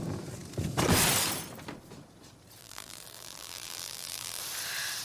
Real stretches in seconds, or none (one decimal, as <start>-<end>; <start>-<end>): 0.0-2.6; 4.4-5.0